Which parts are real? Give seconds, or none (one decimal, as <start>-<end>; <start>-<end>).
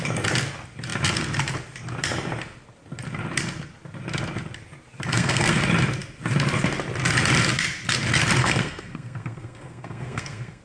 0.0-5.1; 5.6-8.4